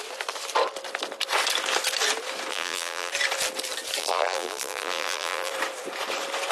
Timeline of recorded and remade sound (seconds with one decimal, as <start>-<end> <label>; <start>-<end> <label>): 0.0-2.5 recorded; 2.5-3.1 remade; 3.1-4.0 recorded; 4.0-5.5 remade; 5.5-6.5 recorded